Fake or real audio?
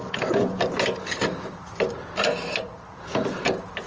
real